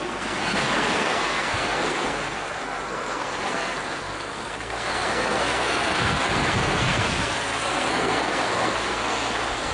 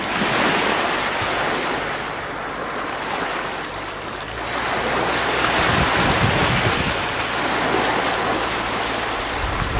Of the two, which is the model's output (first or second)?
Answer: first